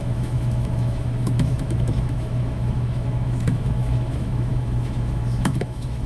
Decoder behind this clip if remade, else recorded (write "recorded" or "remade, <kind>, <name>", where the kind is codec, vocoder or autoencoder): remade, autoencoder, DAC-VAE